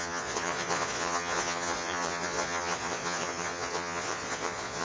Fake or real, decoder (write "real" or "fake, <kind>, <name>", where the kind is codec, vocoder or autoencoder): fake, vocoder, Vocos